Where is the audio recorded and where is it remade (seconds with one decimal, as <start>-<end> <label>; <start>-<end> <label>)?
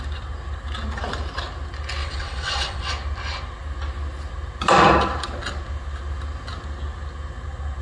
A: 0.0-2.0 recorded; 2.0-2.9 remade; 2.9-7.8 recorded